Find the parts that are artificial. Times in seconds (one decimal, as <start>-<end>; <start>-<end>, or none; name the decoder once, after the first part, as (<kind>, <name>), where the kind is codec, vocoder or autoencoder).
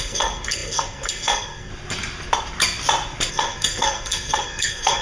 0.0-1.7 (codec, SNAC); 3.3-5.0